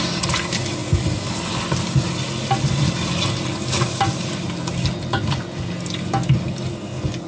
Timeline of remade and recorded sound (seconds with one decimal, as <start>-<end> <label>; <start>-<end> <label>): 0.0-7.3 recorded